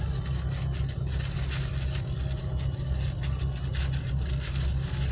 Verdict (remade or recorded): recorded